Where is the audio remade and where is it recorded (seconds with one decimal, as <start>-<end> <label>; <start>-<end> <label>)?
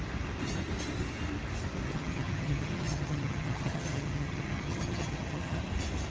0.0-1.9 recorded; 1.9-5.6 remade; 5.6-6.1 recorded